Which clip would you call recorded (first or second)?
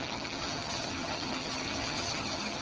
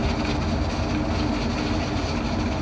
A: second